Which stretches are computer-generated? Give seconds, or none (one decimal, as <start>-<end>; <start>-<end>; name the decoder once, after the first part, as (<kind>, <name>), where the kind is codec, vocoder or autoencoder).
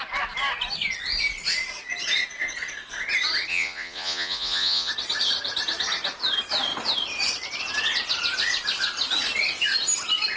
3.5-4.9 (vocoder, Vocos)